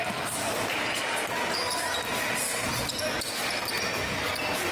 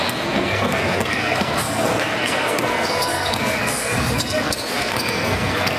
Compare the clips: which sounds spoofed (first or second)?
second